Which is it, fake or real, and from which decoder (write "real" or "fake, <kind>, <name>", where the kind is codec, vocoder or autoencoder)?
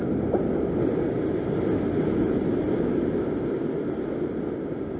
real